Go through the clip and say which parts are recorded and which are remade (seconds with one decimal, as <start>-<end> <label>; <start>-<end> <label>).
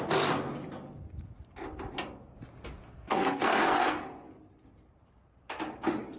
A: 0.0-2.9 recorded; 2.9-4.3 remade; 4.3-6.2 recorded